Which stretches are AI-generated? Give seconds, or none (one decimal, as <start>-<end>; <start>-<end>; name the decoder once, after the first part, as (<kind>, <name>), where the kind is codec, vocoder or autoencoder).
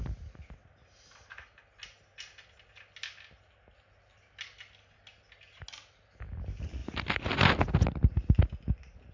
none